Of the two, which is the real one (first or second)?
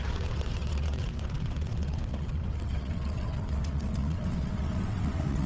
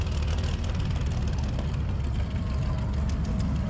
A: second